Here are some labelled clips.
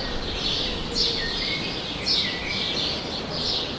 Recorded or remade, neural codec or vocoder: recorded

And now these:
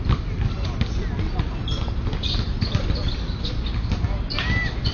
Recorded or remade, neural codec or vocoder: recorded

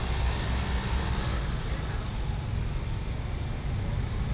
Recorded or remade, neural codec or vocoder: recorded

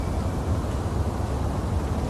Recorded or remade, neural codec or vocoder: recorded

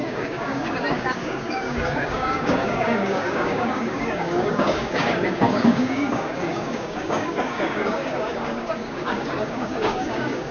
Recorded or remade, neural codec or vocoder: remade, codec, DAC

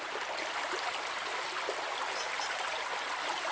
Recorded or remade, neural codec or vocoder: recorded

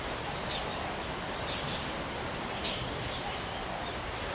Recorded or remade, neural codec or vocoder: recorded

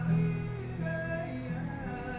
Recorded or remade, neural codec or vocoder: recorded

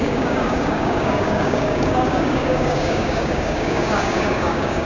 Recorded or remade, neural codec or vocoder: remade, codec, DAC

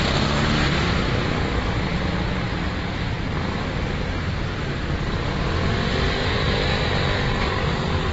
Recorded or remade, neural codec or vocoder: recorded